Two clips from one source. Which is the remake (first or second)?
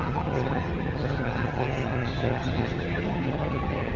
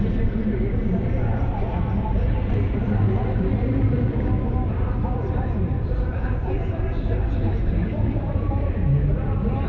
first